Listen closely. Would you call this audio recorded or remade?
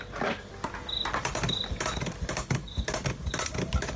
recorded